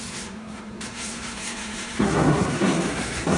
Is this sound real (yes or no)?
no